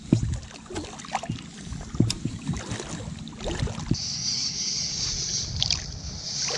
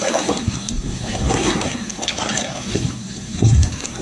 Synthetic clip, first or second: second